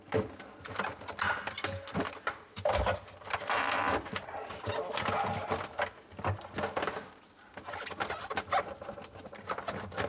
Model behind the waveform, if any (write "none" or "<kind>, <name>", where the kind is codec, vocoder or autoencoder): none